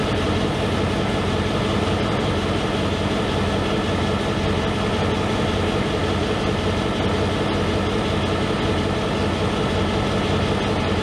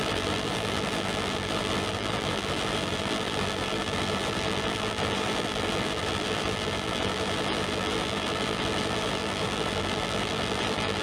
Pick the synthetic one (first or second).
second